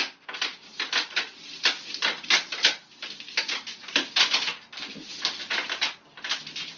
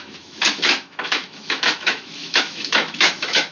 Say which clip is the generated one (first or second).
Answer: second